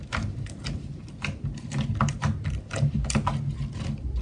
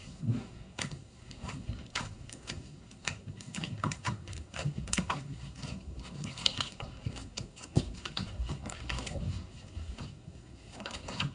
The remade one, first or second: second